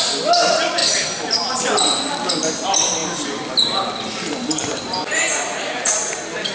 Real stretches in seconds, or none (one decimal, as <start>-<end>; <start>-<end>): 0.0-0.8; 1.6-6.5